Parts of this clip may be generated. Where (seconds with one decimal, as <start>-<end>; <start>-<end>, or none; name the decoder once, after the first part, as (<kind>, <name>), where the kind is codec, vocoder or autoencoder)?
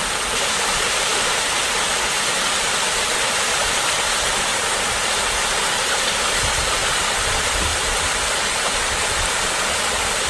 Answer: 0.0-10.3 (vocoder, BigVGAN v2)